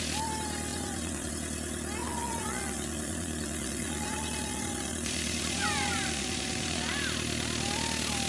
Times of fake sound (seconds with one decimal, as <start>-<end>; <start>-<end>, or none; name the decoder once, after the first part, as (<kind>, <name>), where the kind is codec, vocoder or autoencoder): 0.7-1.3 (vocoder, Vocos); 2.0-6.8